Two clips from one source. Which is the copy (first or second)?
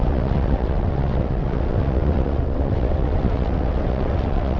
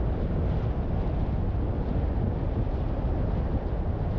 first